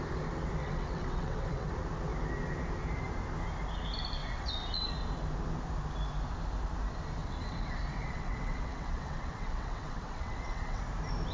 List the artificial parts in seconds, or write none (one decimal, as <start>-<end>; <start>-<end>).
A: 0.6-1.7; 4.2-4.9; 7.2-10.8